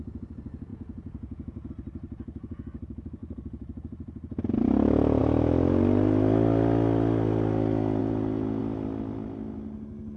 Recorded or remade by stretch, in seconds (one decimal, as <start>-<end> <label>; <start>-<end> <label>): 0.0-0.7 recorded; 0.7-1.7 remade; 1.7-8.0 recorded; 8.0-8.6 remade; 8.6-10.2 recorded